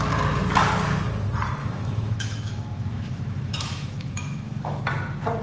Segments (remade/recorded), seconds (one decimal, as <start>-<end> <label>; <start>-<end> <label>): 0.0-1.6 recorded; 1.6-4.8 remade; 4.8-5.4 recorded